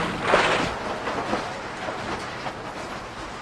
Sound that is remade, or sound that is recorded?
recorded